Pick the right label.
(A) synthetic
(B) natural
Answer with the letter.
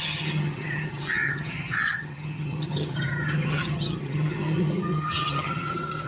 A